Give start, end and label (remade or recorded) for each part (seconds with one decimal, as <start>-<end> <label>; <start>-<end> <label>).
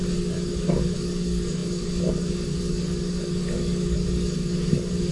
0.0-5.1 remade